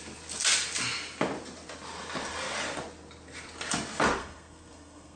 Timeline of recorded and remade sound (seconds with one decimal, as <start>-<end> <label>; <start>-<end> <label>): 0.0-4.2 recorded; 4.2-5.2 remade